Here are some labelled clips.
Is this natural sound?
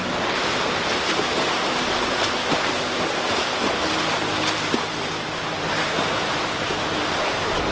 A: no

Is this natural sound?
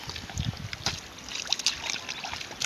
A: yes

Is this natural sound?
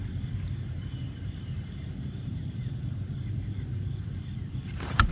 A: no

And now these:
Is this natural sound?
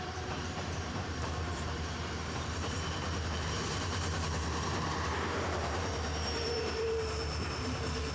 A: no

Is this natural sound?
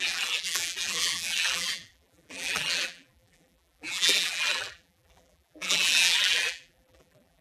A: no